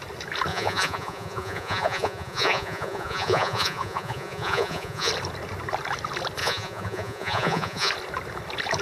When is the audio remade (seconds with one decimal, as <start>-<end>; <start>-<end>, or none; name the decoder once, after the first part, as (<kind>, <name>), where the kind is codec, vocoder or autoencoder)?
0.5-5.1 (vocoder, Vocos); 6.4-7.9